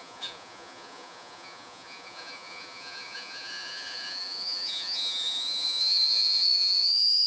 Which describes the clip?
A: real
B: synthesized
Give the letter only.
B